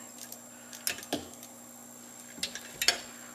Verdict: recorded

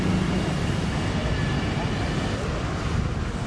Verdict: recorded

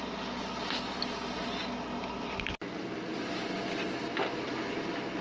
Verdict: recorded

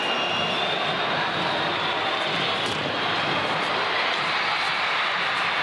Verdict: recorded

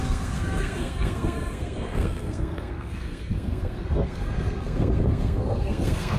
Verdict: remade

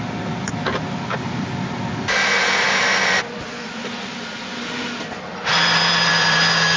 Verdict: recorded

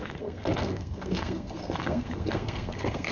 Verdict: remade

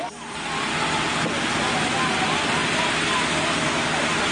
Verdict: recorded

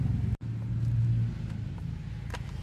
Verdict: recorded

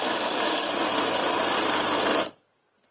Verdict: recorded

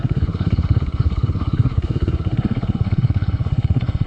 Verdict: remade